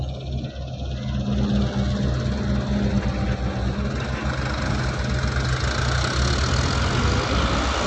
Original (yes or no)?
yes